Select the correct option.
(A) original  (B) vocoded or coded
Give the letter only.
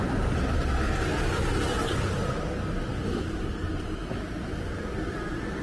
A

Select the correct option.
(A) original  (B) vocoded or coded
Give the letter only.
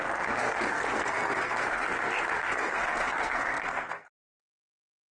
B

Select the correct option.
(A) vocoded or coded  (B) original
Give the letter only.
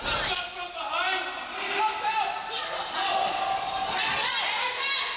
B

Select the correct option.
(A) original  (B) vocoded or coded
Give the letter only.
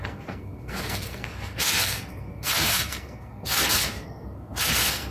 B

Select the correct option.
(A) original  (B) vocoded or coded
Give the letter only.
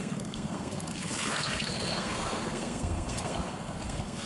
B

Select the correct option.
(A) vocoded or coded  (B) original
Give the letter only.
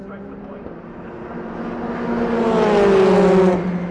B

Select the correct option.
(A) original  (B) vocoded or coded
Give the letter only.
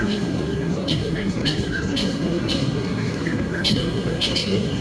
B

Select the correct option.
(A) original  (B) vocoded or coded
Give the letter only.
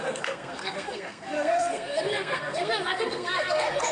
B